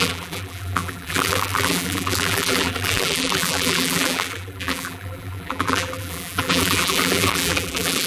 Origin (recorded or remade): remade